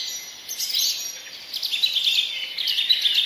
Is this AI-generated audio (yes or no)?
no